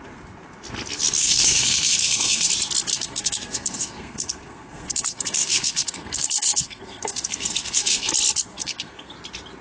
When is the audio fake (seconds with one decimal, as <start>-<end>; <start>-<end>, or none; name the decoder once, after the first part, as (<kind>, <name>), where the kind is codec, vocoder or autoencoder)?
1.2-2.5 (codec, SNAC); 2.9-8.1; 8.5-9.1